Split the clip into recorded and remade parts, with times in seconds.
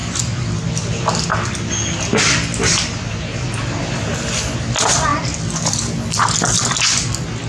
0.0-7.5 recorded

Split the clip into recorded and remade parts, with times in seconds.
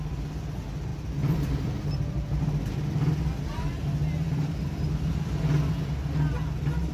0.0-0.9 recorded; 0.9-2.4 remade; 2.4-6.9 recorded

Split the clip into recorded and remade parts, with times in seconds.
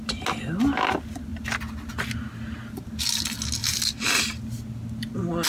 0.0-5.5 recorded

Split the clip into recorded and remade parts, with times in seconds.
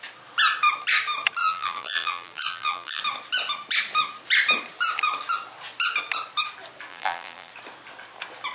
0.0-1.4 recorded; 1.4-3.0 remade; 3.0-6.9 recorded; 6.9-7.5 remade; 7.5-8.5 recorded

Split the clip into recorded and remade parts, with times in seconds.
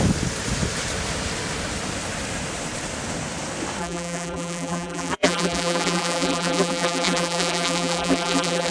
0.0-3.8 recorded; 3.8-8.7 remade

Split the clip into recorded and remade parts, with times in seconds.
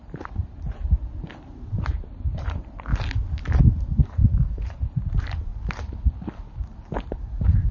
0.0-2.9 remade; 2.9-3.6 recorded; 3.6-5.5 remade; 5.5-7.1 recorded; 7.1-7.7 remade